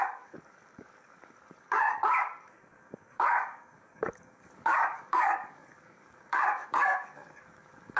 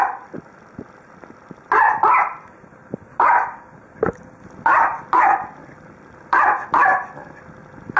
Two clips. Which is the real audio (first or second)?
second